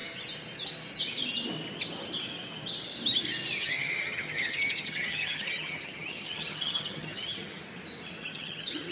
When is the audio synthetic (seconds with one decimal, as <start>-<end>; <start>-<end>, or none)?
3.6-7.6; 8.2-8.9